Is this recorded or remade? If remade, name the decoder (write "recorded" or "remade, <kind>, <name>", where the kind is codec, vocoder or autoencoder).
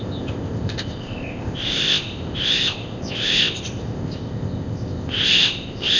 remade, codec, ZipCodec